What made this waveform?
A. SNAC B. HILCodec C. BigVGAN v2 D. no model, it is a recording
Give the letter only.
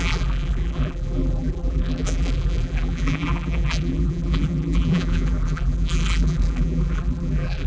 C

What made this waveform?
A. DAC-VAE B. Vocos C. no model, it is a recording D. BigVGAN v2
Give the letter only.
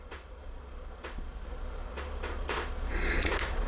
B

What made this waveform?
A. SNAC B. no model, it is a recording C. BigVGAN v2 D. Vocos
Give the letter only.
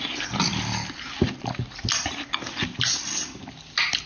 B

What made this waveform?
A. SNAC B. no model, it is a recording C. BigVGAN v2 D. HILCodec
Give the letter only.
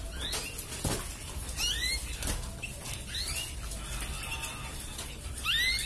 B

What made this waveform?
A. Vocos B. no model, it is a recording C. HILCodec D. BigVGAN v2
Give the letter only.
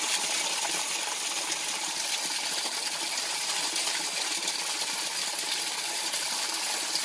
B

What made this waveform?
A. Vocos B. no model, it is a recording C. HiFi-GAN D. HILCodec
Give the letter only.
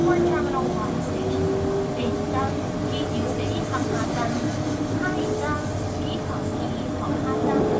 B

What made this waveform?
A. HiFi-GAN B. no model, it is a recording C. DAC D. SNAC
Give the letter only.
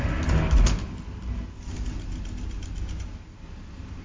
B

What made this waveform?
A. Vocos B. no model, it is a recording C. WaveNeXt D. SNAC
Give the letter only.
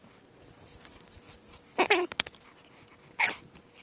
B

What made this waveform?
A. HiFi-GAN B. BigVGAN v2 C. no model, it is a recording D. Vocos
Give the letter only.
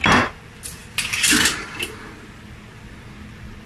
C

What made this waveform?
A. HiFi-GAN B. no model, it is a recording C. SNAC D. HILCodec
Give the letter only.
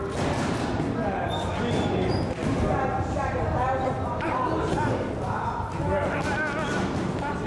B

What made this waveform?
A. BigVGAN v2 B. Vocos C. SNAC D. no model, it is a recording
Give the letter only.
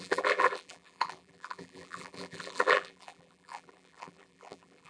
A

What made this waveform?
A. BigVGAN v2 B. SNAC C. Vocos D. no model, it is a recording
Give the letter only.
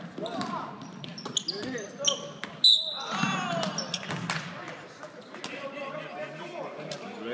D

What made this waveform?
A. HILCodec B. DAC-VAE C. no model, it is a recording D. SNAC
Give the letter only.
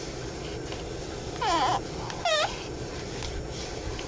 C